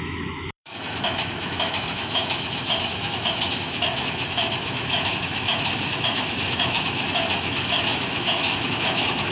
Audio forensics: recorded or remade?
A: remade